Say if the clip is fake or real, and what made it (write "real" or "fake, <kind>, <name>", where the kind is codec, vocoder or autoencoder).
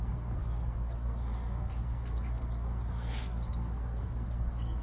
fake, codec, SNAC